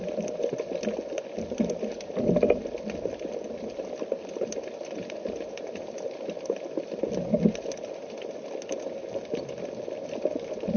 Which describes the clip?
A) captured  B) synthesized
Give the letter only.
A